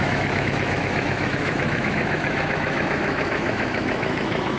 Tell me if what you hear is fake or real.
fake